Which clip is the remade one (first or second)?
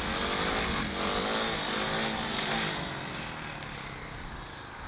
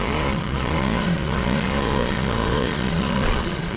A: second